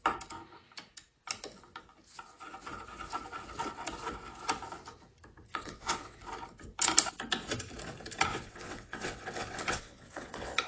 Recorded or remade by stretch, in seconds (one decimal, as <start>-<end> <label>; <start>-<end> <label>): 0.0-5.5 recorded; 5.5-6.2 remade; 6.2-8.3 recorded; 8.3-10.7 remade